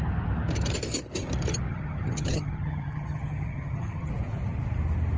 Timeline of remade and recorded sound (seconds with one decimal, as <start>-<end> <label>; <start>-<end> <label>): 0.0-1.7 recorded; 1.7-4.1 remade; 4.1-5.2 recorded